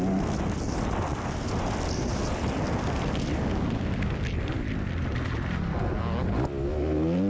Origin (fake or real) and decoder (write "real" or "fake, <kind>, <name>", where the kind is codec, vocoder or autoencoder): real